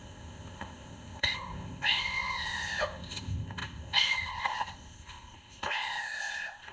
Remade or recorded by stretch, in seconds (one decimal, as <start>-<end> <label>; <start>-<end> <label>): 0.0-6.7 remade